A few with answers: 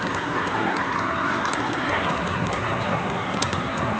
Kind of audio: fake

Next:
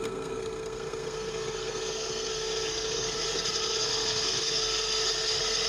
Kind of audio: fake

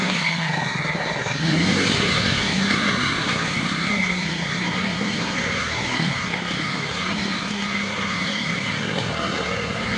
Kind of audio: fake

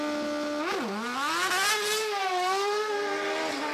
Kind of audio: real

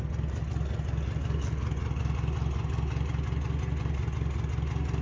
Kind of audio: real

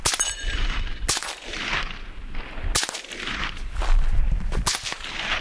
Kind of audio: real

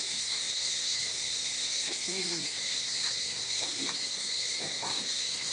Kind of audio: fake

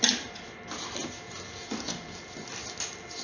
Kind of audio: real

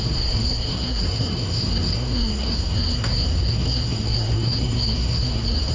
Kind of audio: fake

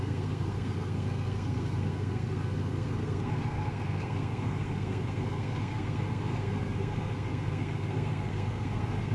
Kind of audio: fake